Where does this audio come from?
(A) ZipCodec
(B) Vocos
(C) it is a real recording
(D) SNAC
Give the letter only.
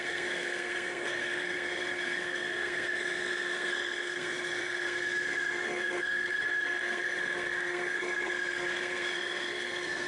D